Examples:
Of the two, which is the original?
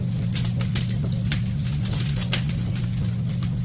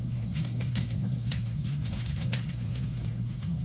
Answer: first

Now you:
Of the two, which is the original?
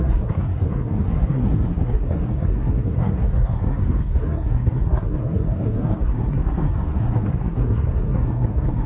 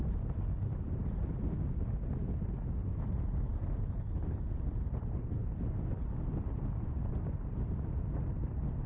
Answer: second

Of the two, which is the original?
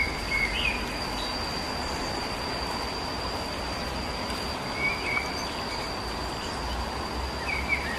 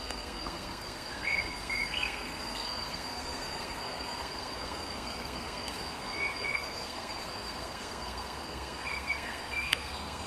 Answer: first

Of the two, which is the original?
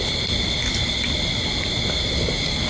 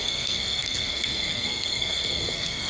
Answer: first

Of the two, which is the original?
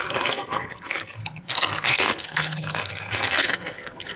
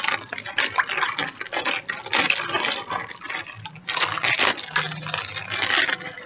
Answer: second